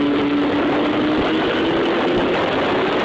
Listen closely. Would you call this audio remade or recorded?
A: recorded